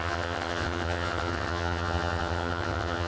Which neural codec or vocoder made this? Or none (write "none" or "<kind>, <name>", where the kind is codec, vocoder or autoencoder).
vocoder, HiFi-GAN